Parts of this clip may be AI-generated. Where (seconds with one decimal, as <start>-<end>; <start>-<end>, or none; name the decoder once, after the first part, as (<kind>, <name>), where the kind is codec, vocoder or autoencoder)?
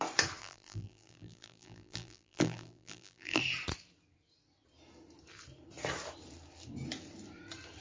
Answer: 0.4-3.4 (vocoder, BigVGAN v2)